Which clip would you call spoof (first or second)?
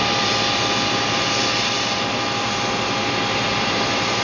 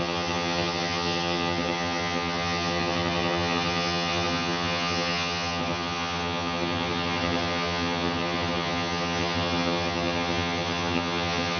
second